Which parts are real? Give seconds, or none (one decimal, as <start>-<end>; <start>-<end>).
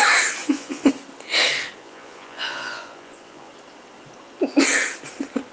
0.0-0.4; 0.9-1.8; 3.5-5.5